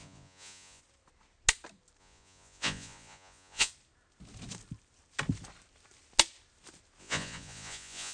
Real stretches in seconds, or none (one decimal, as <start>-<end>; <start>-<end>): 0.8-2.0; 3.7-7.0